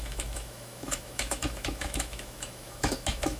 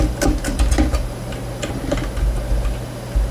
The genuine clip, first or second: second